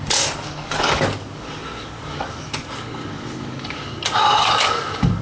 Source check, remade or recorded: remade